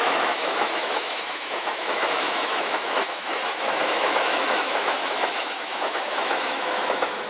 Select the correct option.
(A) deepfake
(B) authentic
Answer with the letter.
A